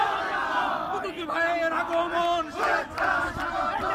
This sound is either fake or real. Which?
real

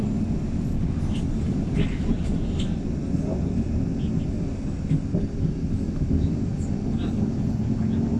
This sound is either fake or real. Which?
real